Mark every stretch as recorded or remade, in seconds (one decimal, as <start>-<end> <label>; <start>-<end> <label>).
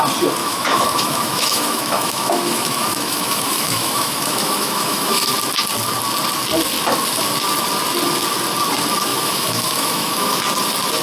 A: 0.0-0.4 recorded; 0.4-5.3 remade; 5.3-9.1 recorded; 9.1-10.4 remade; 10.4-11.0 recorded